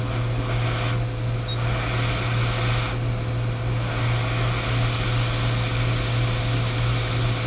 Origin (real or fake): real